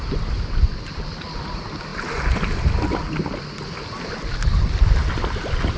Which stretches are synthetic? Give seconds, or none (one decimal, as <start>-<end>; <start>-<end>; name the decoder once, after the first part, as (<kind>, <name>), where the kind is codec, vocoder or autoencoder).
none